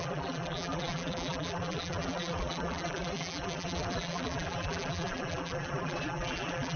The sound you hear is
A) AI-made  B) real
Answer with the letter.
A